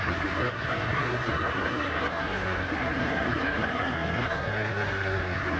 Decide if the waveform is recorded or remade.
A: remade